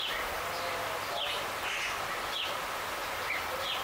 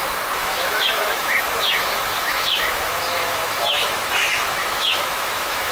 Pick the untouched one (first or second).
first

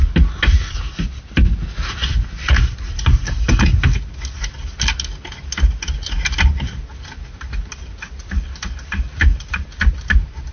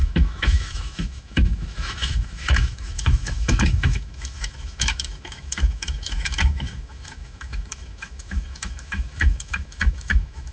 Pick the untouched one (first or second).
first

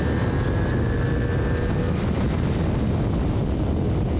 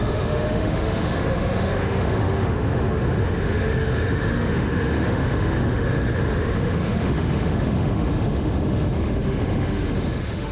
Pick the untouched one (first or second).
first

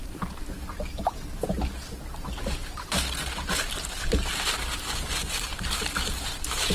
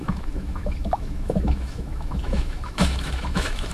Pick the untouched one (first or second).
first